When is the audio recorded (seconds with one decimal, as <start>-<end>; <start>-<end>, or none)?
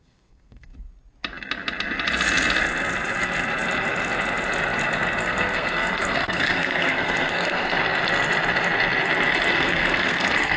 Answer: 0.7-5.2; 7.8-9.5